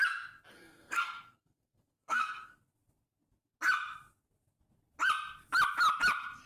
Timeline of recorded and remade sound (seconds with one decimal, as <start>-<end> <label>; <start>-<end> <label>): 0.0-0.5 recorded; 0.5-2.6 remade; 2.6-6.5 recorded